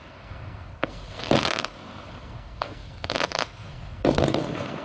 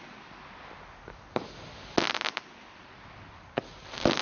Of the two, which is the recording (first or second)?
second